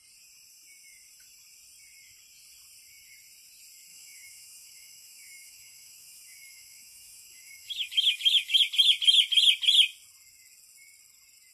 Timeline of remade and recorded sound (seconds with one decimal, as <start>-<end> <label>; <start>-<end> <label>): 0.0-3.9 recorded; 3.9-8.6 remade; 8.6-11.5 recorded